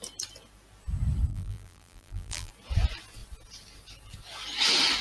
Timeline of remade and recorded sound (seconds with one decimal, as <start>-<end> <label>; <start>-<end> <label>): 0.0-1.3 recorded; 1.3-2.5 remade; 2.5-5.0 recorded